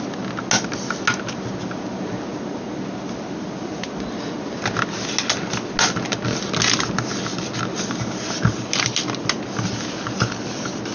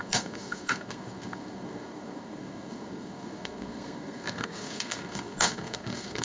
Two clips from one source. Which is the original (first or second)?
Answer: first